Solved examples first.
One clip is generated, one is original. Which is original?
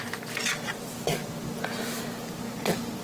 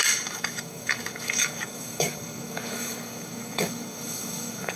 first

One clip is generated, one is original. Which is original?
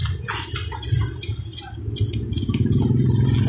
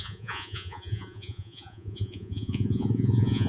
first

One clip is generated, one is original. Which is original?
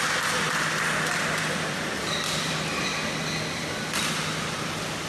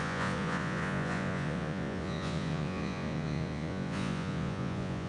first